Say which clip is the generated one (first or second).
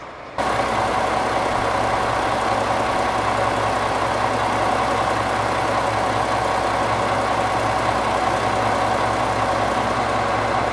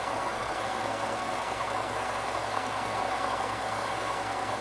second